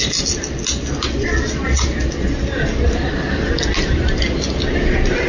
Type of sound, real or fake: real